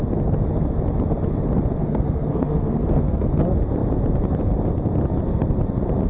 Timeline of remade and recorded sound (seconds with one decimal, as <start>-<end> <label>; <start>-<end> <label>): 0.0-1.8 recorded; 1.8-3.3 remade; 3.3-6.1 recorded